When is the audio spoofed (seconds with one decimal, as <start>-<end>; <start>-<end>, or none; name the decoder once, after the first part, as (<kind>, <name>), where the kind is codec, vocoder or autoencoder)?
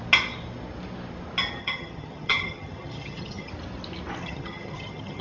1.6-3.5 (vocoder, HiFi-GAN); 4.2-5.2